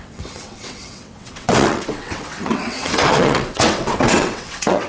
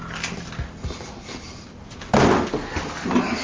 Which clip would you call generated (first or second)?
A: first